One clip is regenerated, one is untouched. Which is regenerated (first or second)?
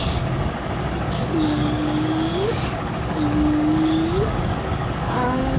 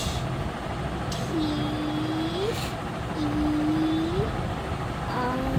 first